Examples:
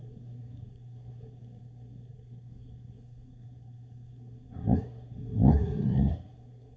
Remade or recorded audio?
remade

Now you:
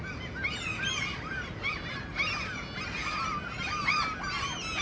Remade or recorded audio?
recorded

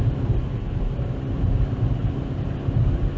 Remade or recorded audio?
recorded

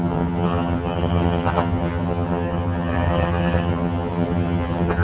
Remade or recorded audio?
remade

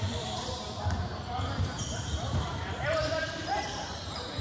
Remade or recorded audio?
remade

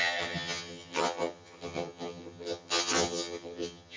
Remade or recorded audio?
remade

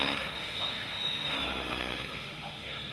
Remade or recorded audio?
remade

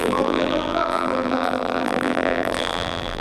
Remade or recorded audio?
remade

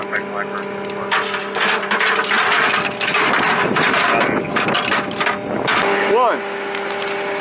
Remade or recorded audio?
recorded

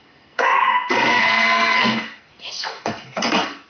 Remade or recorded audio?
remade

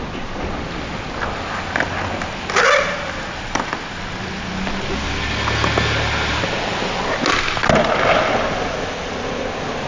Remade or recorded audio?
recorded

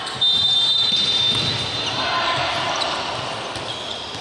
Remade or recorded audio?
recorded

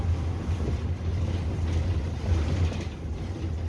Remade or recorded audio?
recorded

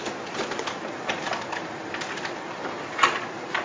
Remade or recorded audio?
recorded